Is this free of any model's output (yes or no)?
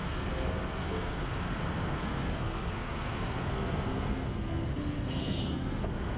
no